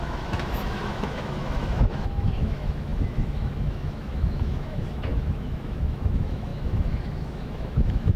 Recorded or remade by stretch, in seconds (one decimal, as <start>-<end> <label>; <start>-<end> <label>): 0.0-8.2 remade